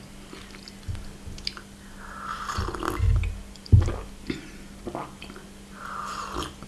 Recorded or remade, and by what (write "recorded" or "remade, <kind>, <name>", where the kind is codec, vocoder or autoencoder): recorded